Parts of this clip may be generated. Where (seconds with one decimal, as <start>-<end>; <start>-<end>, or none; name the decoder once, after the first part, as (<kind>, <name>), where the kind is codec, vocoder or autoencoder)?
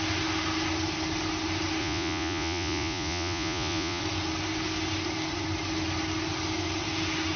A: 1.8-4.0 (vocoder, Vocos)